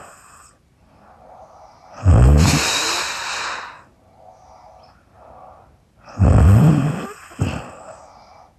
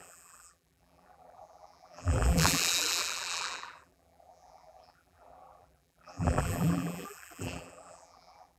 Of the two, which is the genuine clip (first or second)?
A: first